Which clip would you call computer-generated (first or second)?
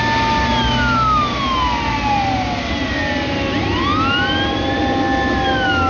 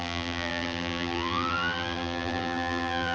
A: second